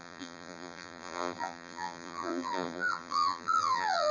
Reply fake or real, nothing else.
fake